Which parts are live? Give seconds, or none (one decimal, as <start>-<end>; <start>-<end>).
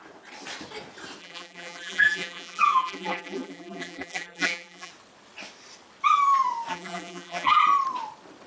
0.0-1.2; 4.9-6.7; 7.6-8.5